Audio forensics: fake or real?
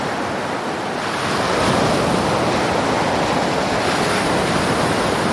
real